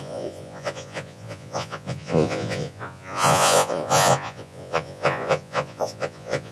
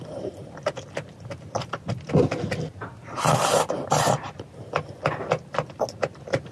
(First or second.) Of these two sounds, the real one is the second